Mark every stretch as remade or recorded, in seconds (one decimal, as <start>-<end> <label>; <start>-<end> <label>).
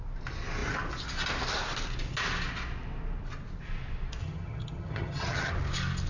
0.0-4.2 recorded; 4.2-5.5 remade; 5.5-6.1 recorded